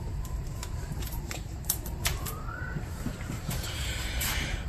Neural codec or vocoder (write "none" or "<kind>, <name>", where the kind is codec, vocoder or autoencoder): vocoder, BigVGAN v2